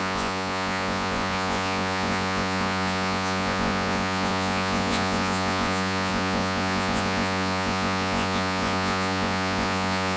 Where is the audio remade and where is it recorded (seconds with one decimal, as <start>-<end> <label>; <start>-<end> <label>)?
0.0-10.2 remade